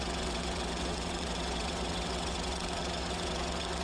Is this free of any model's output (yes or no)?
no